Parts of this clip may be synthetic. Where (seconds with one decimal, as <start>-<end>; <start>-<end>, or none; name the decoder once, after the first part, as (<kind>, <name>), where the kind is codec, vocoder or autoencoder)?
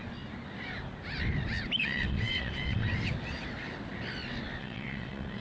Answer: 1.8-2.9 (vocoder, WaveNeXt); 4.6-5.4